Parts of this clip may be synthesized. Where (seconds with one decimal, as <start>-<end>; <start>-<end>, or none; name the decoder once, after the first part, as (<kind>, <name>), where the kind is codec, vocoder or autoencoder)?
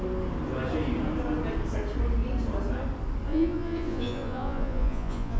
3.3-5.4 (vocoder, Vocos)